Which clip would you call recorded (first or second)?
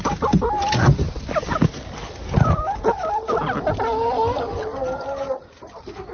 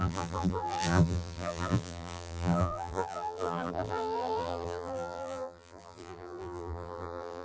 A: first